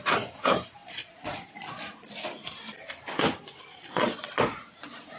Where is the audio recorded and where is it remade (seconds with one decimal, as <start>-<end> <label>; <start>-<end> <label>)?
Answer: 0.0-0.8 recorded; 0.8-2.1 remade; 2.1-3.7 recorded; 3.7-5.2 remade